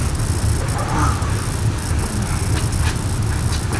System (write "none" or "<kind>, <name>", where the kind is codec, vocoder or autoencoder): none